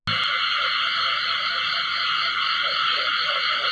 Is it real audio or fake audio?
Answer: real